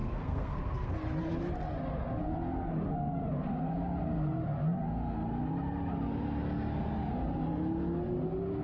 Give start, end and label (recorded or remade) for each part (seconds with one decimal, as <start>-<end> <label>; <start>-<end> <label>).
0.0-0.9 remade; 0.9-8.6 recorded